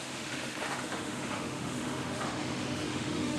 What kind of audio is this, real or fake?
fake